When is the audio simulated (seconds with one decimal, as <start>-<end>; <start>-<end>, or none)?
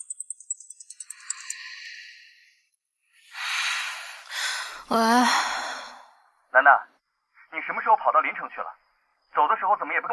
9.1-10.1